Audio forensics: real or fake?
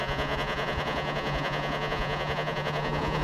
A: fake